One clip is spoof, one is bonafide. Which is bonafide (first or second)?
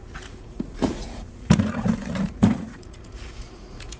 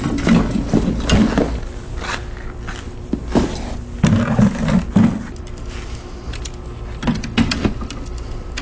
second